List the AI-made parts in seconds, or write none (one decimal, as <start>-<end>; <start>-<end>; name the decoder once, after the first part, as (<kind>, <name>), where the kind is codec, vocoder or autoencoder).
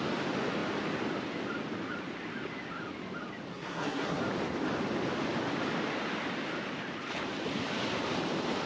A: 3.5-4.2 (codec, SNAC)